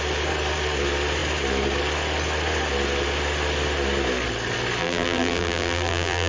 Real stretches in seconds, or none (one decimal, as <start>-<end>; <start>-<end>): 0.0-4.8